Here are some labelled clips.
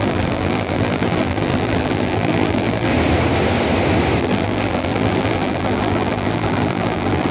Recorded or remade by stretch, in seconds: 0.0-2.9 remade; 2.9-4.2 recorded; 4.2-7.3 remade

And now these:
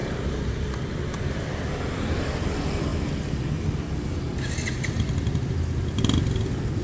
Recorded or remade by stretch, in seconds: 0.0-2.5 remade; 2.5-2.9 recorded; 2.9-4.5 remade; 4.5-6.8 recorded

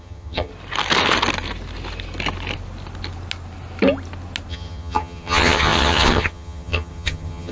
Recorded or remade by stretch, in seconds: 0.0-0.5 remade; 0.5-4.5 recorded; 4.5-7.5 remade

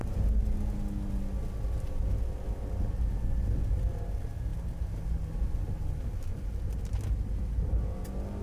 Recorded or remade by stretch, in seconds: 0.0-8.4 recorded

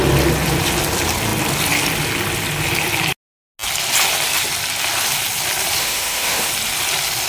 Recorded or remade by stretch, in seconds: 0.0-5.8 recorded; 5.8-6.5 remade; 6.5-7.3 recorded

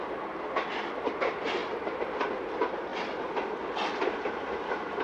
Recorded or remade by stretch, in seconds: 0.0-5.0 recorded